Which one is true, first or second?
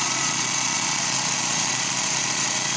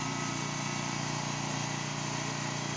second